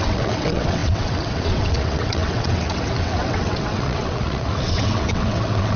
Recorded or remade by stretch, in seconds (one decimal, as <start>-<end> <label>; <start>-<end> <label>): 0.0-5.8 remade